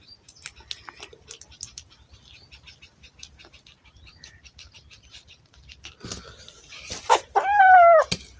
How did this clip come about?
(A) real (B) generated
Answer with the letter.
A